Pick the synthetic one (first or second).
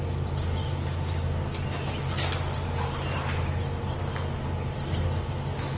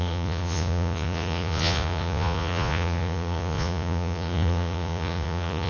second